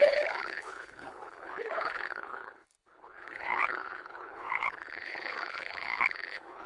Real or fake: fake